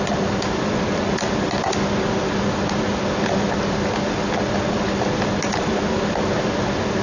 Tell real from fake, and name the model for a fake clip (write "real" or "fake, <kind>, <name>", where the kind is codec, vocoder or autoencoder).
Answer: real